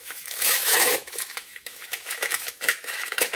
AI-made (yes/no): yes